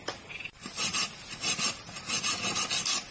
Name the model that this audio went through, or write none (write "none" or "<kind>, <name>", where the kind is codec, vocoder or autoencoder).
none